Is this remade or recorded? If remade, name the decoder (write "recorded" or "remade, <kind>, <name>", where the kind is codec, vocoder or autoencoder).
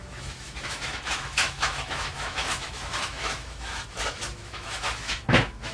remade, autoencoder, DAC-VAE